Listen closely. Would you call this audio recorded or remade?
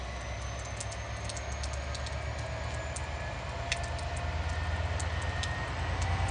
recorded